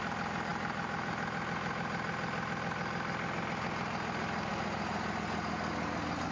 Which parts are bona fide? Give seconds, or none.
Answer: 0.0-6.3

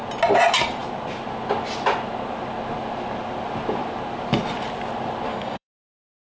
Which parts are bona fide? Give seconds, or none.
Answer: 0.0-5.3

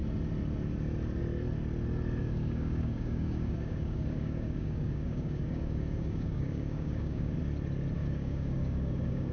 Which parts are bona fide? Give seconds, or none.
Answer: 0.0-2.2; 7.4-8.0

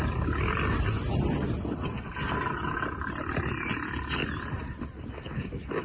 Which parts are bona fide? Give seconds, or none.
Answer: 0.0-5.8

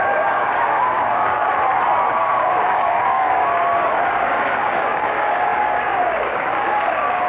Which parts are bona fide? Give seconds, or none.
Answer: 1.4-2.1

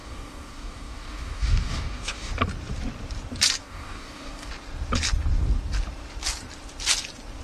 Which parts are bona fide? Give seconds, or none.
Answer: 2.3-3.6; 4.5-7.4

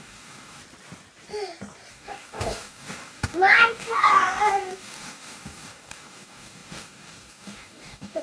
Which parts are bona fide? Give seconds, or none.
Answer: 0.6-1.9